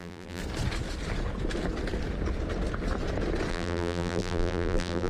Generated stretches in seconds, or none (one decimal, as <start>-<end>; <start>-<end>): 0.0-0.4; 3.5-5.1